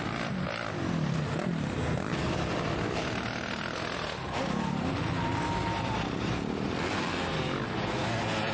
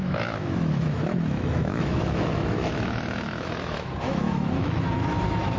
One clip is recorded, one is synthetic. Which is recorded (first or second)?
first